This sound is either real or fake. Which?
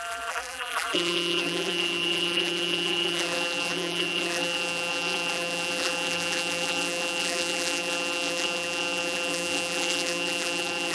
fake